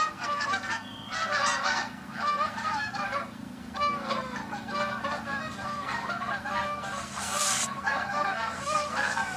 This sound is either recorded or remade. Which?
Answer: remade